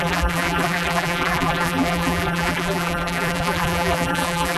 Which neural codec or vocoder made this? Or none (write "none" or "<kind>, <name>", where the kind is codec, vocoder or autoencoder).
vocoder, BigVGAN v2